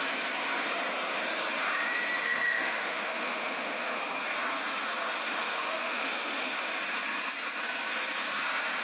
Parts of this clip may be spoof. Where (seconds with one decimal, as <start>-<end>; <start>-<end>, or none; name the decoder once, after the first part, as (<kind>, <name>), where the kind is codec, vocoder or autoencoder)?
2.2-3.9 (autoencoder, DAC-VAE); 5.2-6.7